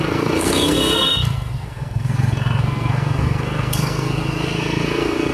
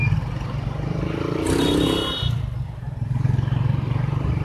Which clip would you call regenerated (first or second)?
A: first